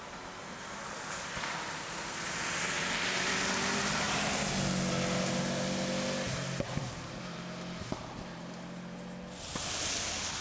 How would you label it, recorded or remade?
recorded